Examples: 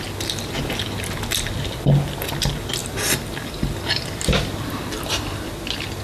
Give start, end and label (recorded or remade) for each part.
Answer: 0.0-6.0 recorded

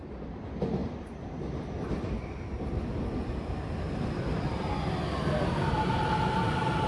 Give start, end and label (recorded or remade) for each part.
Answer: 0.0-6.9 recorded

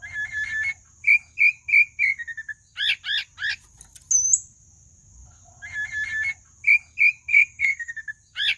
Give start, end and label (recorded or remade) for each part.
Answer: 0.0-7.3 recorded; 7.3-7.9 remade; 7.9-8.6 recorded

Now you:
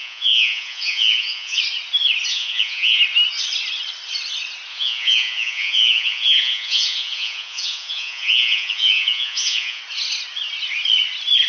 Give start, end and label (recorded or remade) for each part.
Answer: 0.0-1.6 remade; 1.6-2.3 recorded; 2.3-3.0 remade; 3.0-4.7 recorded; 4.7-9.8 remade; 9.8-11.5 recorded

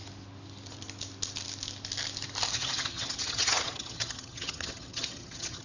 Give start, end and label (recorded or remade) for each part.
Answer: 0.0-2.5 recorded; 2.5-5.6 remade

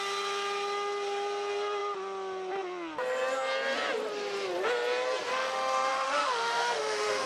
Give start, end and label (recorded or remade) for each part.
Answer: 0.0-5.3 recorded; 5.3-7.3 remade

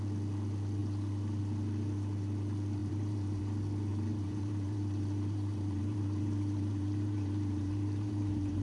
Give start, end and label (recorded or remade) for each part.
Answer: 0.0-2.8 recorded; 2.8-3.4 remade; 3.4-3.9 recorded; 3.9-8.6 remade